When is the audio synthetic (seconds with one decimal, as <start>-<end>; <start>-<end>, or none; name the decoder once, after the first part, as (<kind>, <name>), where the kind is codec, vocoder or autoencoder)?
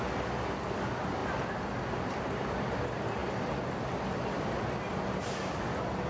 none